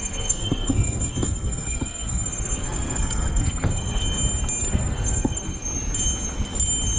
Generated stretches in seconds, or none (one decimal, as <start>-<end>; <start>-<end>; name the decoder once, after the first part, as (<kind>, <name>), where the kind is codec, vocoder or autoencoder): 0.0-4.0 (codec, SNAC); 4.7-5.6

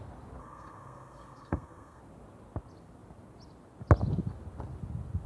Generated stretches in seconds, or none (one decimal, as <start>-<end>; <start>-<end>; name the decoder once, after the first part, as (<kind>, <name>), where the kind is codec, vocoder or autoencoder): 0.4-2.0 (codec, SNAC)

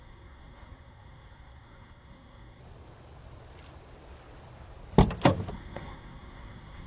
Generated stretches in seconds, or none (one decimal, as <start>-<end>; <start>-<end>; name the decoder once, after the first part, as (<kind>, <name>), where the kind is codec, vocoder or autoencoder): 0.0-2.6 (codec, SNAC); 5.5-6.9

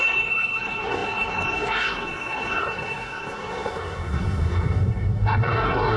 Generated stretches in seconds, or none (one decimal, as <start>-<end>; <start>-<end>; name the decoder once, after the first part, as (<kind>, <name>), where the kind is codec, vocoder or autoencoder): 0.0-6.0 (codec, SNAC)

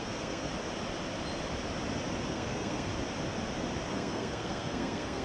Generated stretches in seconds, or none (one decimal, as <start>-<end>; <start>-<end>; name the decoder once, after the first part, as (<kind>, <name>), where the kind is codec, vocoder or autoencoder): 0.0-0.5 (codec, SNAC); 2.3-2.9; 3.9-5.2

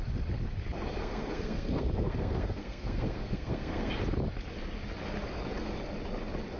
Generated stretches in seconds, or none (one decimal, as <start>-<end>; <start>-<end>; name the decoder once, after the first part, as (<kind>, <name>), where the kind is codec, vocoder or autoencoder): 1.0-3.9 (codec, SNAC)